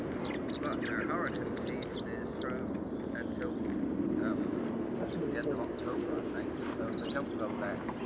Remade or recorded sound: recorded